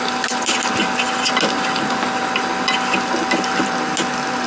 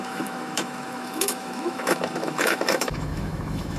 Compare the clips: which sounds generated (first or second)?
second